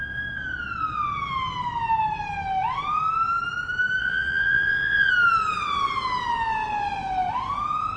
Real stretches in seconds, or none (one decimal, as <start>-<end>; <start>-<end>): 0.0-4.0; 5.1-8.0